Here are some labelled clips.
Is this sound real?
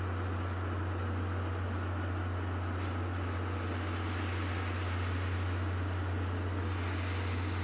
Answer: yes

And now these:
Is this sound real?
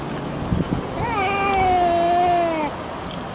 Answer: yes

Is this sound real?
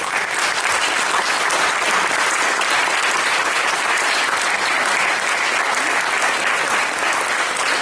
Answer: yes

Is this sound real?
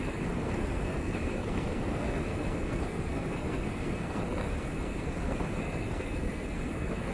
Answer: no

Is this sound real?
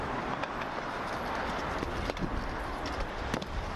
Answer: yes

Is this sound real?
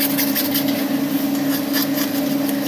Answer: yes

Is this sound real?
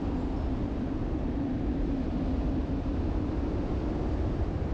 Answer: no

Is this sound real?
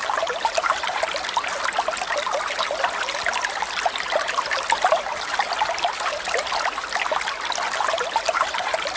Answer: yes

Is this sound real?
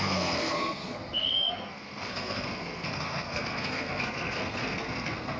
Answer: no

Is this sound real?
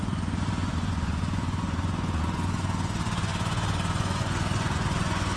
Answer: no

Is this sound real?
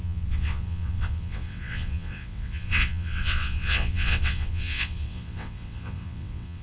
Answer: no